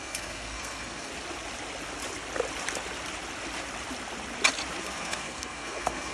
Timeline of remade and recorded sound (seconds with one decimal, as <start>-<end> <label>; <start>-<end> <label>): 0.0-1.1 remade; 1.1-4.8 recorded; 4.8-6.1 remade